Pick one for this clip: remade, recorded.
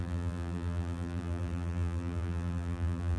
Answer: remade